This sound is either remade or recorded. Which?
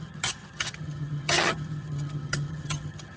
remade